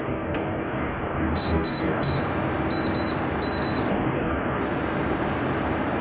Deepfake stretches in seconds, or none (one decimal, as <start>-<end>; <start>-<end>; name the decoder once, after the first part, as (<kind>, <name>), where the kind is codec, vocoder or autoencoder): 0.0-2.2 (codec, DAC); 3.9-4.6